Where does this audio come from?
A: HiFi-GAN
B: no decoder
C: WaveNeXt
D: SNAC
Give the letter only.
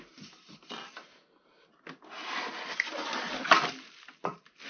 B